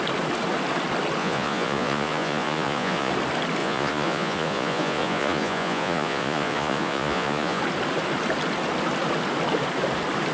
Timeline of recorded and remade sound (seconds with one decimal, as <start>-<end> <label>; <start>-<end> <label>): 0.0-1.2 recorded; 1.2-3.1 remade; 3.1-3.6 recorded; 3.6-7.6 remade; 7.6-10.3 recorded